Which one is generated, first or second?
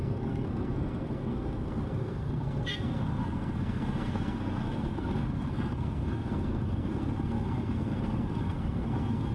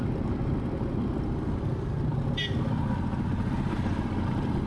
first